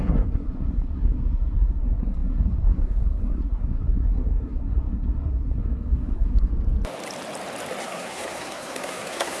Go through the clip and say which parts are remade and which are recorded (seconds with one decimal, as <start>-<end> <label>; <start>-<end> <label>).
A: 0.0-6.5 remade; 6.5-7.8 recorded; 7.8-9.4 remade